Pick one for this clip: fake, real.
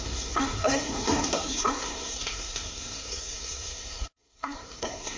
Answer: fake